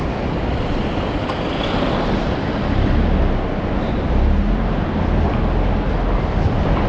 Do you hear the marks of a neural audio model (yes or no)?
no